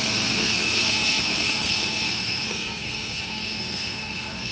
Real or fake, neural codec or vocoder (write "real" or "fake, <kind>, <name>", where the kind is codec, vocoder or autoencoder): fake, codec, SNAC